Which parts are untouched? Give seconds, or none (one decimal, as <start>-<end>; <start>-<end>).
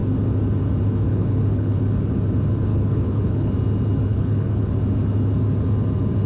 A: 0.0-1.1; 1.8-2.7; 3.5-4.1; 4.7-6.3